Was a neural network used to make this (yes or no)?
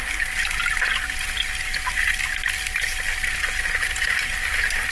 no